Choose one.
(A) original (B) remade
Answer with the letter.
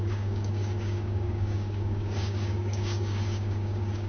B